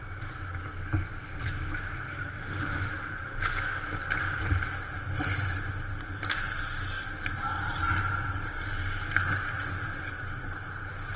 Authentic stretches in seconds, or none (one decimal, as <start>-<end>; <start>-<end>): 0.0-2.4; 2.9-11.2

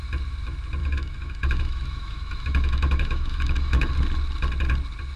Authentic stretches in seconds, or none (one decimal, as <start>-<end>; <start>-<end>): 0.0-0.8; 3.9-5.2

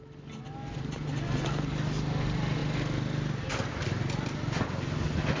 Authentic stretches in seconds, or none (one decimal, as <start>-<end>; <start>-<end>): 0.0-5.4

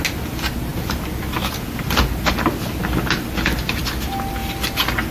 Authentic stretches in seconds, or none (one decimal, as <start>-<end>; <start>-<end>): 0.0-5.1